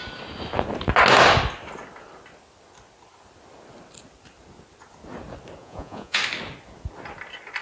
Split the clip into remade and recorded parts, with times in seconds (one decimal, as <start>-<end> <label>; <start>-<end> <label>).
0.0-5.6 recorded; 5.6-6.2 remade; 6.2-7.6 recorded